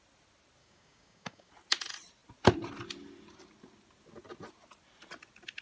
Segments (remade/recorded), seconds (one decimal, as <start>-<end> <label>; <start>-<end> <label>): 0.0-0.6 recorded; 0.6-1.5 remade; 1.5-5.6 recorded